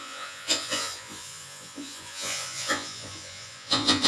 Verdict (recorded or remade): remade